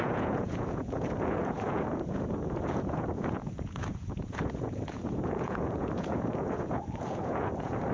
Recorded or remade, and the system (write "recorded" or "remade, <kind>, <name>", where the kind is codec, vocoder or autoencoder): remade, vocoder, Vocos